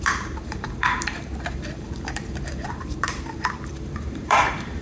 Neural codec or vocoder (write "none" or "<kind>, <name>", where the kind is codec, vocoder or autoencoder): vocoder, BigVGAN v2